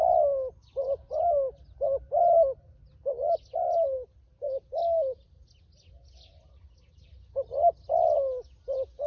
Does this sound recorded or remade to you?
recorded